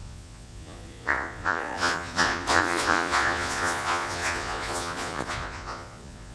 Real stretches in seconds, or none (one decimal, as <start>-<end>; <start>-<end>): none